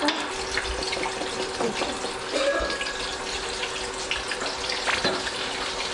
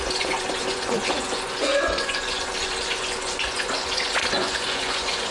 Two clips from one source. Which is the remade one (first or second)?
second